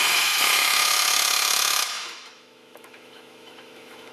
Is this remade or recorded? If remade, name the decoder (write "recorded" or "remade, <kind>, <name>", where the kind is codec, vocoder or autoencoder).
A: remade, autoencoder, DAC-VAE